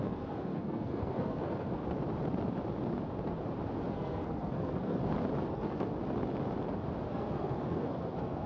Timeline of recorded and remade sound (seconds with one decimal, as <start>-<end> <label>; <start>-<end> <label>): 0.0-1.8 remade; 1.8-3.9 recorded; 3.9-5.0 remade; 5.0-5.5 recorded; 5.5-5.9 remade; 5.9-7.1 recorded; 7.1-8.5 remade